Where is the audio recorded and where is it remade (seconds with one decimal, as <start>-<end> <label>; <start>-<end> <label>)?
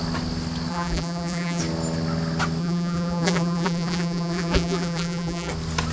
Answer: 0.0-0.7 recorded; 0.7-1.6 remade; 1.6-2.6 recorded; 2.6-5.5 remade; 5.5-5.9 recorded